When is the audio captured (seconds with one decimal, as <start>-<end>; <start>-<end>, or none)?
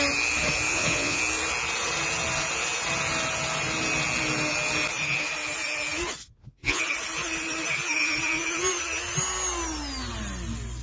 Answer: 0.0-0.7; 1.2-6.2; 6.8-10.8